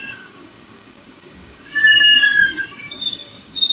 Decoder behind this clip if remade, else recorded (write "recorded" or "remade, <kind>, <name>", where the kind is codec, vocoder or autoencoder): remade, codec, DAC